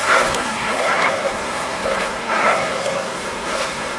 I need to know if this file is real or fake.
fake